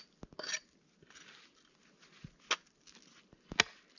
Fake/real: real